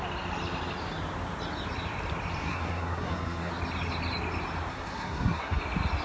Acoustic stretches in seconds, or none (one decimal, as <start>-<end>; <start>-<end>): 0.0-2.4; 3.5-4.7; 5.6-6.0